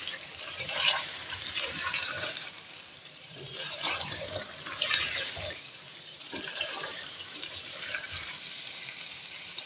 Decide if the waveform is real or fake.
fake